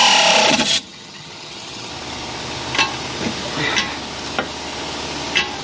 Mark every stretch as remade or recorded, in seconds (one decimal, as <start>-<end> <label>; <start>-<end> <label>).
0.0-0.5 recorded; 0.5-1.9 remade; 1.9-5.6 recorded